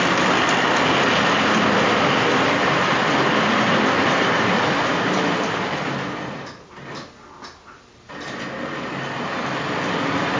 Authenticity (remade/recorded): recorded